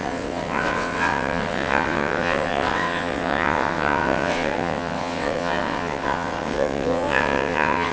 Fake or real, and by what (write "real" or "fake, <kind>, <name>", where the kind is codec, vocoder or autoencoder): fake, vocoder, WaveNeXt